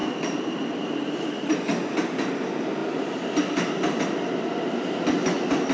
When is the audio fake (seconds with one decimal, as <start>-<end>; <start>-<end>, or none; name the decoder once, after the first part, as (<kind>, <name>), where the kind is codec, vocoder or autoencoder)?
0.0-1.6 (vocoder, BigVGAN v2)